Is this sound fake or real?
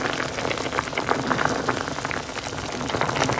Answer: fake